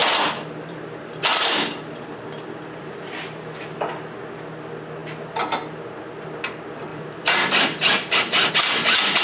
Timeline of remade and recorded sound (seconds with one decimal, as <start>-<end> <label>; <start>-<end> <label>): 0.0-3.9 remade; 3.9-6.9 recorded; 6.9-8.5 remade; 8.5-9.2 recorded